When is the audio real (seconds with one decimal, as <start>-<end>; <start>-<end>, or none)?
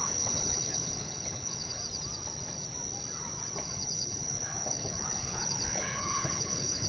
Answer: 1.8-3.7